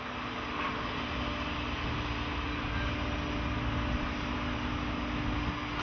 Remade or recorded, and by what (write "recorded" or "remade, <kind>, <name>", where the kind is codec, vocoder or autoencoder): recorded